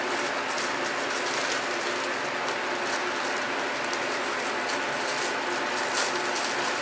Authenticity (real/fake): real